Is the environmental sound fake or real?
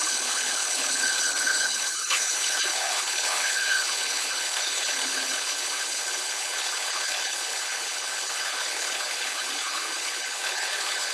fake